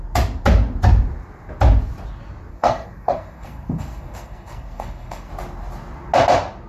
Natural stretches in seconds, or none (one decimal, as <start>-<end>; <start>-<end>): 0.0-2.5; 5.3-6.7